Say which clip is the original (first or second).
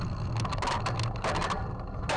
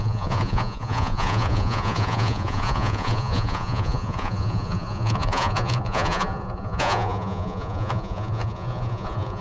first